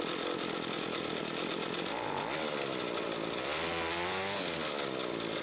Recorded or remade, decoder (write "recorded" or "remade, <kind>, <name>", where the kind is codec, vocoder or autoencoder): recorded